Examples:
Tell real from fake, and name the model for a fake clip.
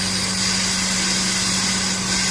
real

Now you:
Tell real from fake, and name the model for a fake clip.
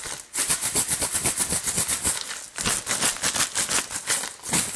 real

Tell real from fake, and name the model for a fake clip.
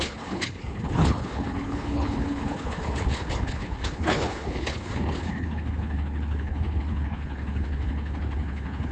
fake, codec, HILCodec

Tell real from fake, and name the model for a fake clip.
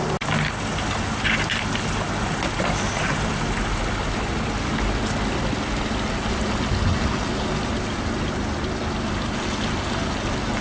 real